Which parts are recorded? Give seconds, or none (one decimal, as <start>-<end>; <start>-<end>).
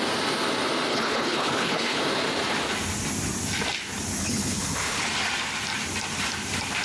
0.0-0.9; 2.0-4.2; 5.0-6.8